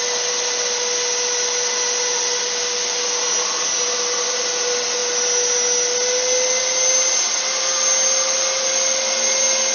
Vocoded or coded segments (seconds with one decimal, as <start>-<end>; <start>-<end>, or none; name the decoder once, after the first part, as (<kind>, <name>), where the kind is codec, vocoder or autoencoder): none